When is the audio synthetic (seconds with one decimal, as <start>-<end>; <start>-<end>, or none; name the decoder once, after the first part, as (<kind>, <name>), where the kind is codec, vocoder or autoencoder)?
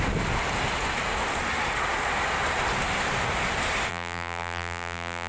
3.9-5.3 (vocoder, BigVGAN v2)